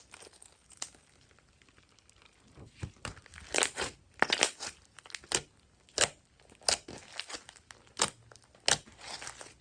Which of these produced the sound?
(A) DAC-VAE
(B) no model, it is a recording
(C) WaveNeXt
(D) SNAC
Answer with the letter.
B